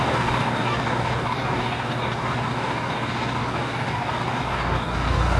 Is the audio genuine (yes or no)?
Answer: no